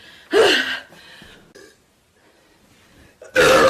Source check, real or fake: real